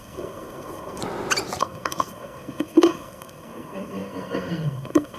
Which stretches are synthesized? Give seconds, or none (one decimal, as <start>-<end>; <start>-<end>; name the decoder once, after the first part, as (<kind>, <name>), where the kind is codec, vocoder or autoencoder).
0.0-1.0 (codec, SNAC); 1.6-5.2